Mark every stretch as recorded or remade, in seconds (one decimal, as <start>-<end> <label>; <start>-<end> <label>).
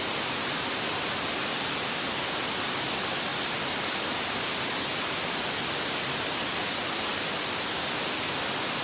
0.0-8.8 recorded